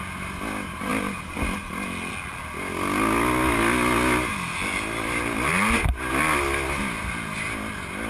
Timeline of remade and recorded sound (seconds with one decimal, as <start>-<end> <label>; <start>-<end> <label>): 0.0-8.1 recorded